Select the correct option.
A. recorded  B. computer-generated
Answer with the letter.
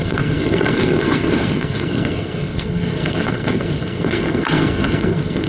B